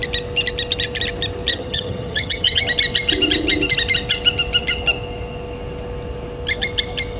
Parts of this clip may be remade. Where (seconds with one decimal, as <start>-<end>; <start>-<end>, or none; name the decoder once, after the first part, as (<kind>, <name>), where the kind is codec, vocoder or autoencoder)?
1.5-2.6 (vocoder, HiFi-GAN)